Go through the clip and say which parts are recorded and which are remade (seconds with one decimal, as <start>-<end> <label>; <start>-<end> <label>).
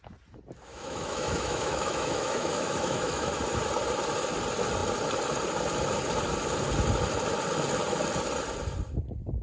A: 0.0-0.7 recorded; 0.7-3.3 remade; 3.3-9.4 recorded